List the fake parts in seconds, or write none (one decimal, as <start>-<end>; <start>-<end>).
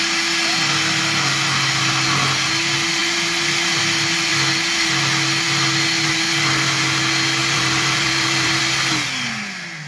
7.4-8.6